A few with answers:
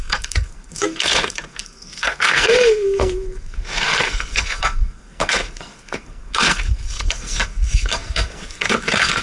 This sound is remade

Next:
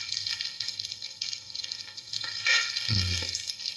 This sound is remade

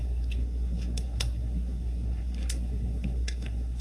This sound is remade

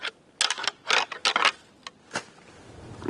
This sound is recorded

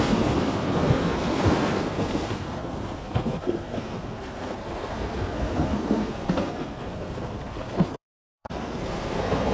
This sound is remade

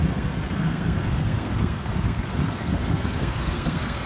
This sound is remade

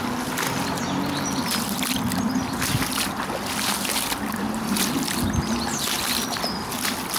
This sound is recorded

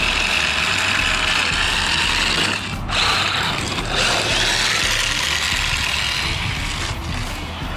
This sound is recorded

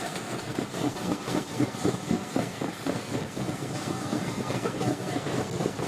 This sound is remade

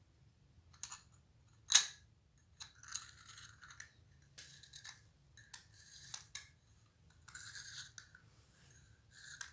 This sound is recorded